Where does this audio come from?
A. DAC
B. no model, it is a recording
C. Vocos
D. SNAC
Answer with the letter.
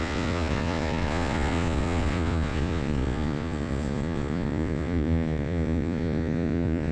C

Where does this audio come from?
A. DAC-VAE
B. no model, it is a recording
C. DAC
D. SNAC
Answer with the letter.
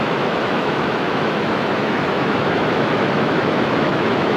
A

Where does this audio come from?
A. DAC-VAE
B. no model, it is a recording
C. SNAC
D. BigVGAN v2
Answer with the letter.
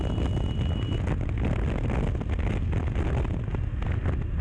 B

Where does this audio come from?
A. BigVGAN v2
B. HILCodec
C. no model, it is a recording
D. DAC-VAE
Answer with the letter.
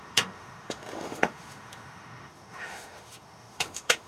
D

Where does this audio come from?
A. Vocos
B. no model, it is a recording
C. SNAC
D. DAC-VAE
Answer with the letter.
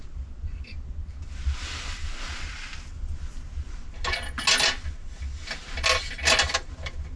B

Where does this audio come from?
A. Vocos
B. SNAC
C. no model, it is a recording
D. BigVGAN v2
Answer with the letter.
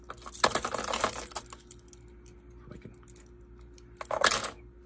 C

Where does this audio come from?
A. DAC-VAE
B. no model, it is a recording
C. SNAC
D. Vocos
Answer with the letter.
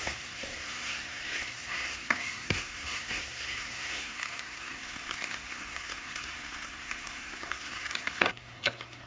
C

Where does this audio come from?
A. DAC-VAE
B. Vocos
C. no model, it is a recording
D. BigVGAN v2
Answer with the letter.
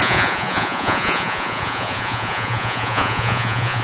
B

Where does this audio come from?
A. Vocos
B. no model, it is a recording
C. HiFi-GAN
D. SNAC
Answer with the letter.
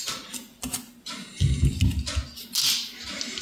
B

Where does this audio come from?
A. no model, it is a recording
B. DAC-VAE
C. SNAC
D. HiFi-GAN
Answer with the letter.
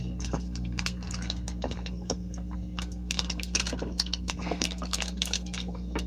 C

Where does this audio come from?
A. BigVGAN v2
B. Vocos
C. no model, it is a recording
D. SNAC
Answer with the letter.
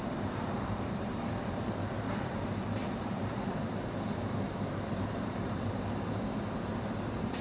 A